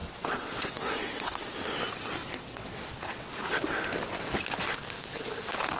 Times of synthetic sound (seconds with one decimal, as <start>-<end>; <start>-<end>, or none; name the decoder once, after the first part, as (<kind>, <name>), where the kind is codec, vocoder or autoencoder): 0.0-1.4 (vocoder, WaveNeXt); 2.2-3.3